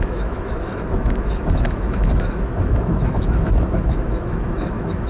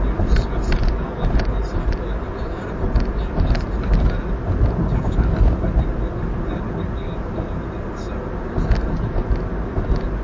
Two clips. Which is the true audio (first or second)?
second